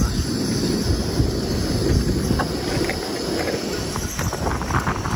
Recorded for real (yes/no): yes